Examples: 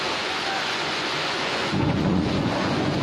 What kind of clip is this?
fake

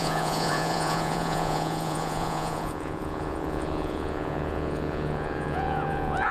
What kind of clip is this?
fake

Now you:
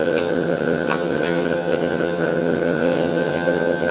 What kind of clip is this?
fake